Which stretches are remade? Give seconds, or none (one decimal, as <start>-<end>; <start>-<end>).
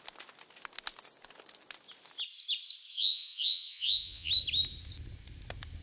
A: 2.9-4.3